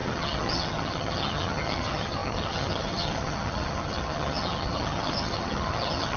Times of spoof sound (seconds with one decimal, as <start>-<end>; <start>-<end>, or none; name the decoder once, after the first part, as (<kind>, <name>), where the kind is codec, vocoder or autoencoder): 0.0-6.2 (vocoder, HiFi-GAN)